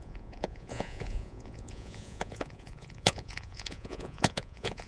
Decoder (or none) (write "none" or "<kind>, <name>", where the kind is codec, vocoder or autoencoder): vocoder, Vocos